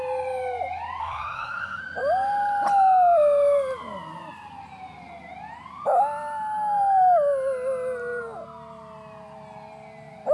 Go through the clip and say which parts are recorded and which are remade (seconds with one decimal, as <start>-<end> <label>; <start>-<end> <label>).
0.0-1.0 recorded; 1.0-1.8 remade; 1.8-10.3 recorded